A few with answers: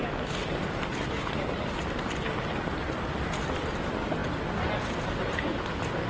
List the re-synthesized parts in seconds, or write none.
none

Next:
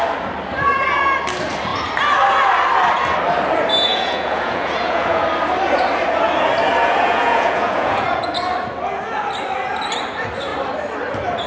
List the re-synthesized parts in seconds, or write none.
3.9-5.2 (vocoder, Vocos); 6.8-8.3